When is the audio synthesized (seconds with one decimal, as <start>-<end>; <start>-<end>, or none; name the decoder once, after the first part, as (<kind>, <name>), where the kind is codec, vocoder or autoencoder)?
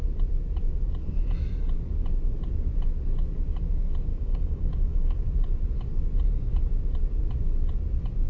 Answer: 4.1-5.2 (codec, DAC)